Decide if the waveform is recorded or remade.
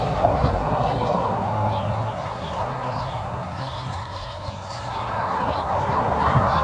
remade